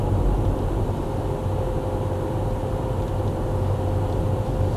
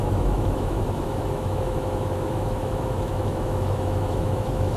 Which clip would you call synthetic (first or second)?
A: second